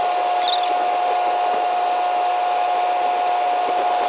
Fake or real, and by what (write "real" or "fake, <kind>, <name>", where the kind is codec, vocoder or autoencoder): real